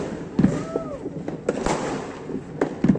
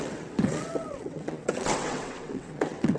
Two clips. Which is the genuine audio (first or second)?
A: first